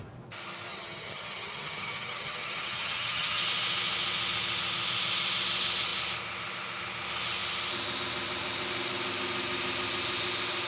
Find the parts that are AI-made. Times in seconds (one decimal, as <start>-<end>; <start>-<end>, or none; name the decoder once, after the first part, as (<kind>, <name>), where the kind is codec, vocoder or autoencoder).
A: 0.7-3.4 (vocoder, HiFi-GAN)